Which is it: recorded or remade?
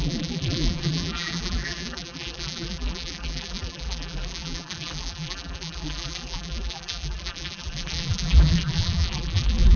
remade